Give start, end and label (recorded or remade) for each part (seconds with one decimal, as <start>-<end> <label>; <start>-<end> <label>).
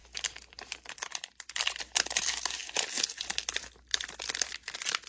0.0-5.1 recorded